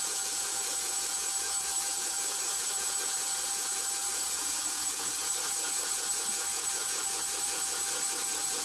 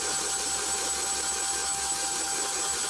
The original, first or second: second